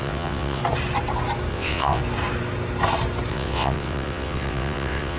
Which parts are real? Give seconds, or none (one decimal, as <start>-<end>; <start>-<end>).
0.6-1.5; 2.0-3.3